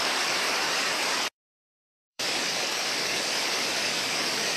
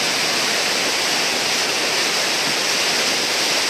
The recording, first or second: second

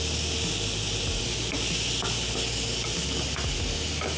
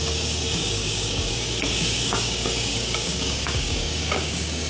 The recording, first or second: first